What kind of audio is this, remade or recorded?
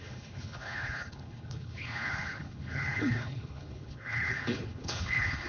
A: remade